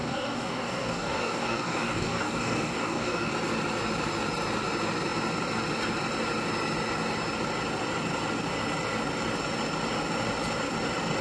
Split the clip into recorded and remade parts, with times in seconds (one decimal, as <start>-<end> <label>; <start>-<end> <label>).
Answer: 0.0-3.3 remade; 3.3-11.2 recorded